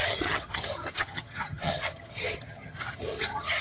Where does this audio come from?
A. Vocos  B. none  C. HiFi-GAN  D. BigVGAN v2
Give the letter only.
C